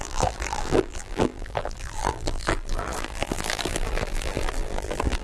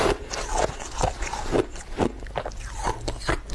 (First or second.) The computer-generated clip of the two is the first